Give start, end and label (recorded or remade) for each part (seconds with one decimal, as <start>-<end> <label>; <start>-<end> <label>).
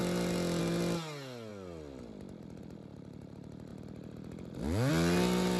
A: 0.0-5.6 recorded